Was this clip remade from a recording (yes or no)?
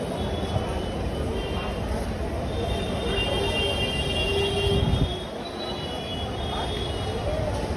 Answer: no